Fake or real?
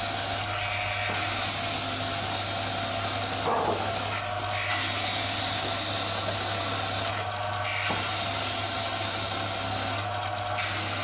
real